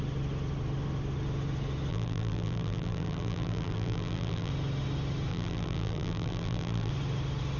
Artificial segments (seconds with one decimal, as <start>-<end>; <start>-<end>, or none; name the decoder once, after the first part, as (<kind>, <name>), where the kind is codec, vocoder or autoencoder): 1.9-4.5 (vocoder, BigVGAN v2); 5.3-6.9